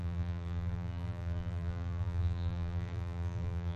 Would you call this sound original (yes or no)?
no